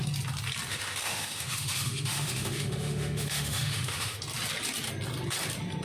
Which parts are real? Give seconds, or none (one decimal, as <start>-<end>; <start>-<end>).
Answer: 0.0-0.7; 4.2-5.8